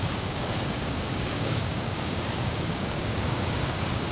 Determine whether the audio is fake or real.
fake